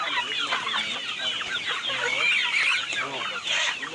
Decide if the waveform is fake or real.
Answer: real